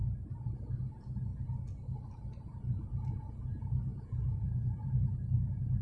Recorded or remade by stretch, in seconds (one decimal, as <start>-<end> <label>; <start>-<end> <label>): 0.0-3.9 recorded; 3.9-4.9 remade; 4.9-5.8 recorded